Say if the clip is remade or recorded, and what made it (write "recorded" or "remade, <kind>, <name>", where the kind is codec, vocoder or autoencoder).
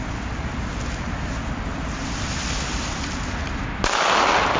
recorded